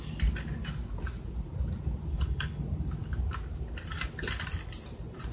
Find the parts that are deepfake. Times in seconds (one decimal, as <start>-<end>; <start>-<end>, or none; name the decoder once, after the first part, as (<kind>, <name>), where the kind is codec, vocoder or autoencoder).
2.1-2.6 (codec, HILCodec)

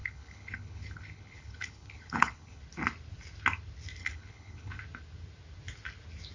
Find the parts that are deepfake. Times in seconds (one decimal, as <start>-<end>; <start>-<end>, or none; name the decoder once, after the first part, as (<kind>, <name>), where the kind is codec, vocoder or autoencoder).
0.0-2.6 (codec, HILCodec); 4.0-4.8

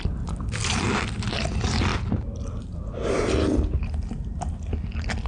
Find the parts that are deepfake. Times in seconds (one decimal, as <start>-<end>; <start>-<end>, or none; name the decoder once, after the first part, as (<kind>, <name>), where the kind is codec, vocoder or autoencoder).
none

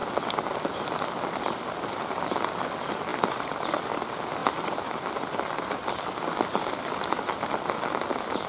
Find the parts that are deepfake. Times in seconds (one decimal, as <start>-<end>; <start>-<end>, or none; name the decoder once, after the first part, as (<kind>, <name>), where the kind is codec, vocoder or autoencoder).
none

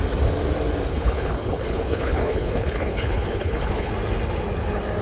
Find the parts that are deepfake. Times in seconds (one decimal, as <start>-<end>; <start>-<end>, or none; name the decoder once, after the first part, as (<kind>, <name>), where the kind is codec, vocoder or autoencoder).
0.9-3.9 (codec, HILCodec)

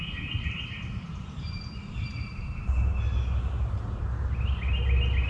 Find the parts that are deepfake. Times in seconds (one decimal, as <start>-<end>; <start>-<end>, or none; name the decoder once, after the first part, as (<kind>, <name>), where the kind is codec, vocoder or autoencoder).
none